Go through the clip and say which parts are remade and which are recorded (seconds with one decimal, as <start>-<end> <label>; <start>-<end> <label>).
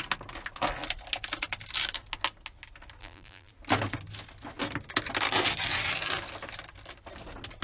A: 0.0-3.0 recorded; 3.0-3.5 remade; 3.5-7.6 recorded